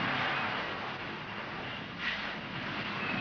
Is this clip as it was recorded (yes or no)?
yes